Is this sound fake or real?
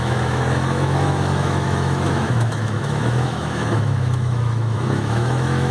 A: fake